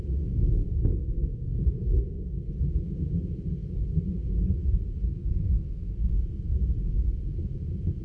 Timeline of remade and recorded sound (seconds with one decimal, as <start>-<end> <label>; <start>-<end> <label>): 0.0-0.9 recorded; 0.9-2.5 remade; 2.5-5.1 recorded; 5.1-6.1 remade; 6.1-8.0 recorded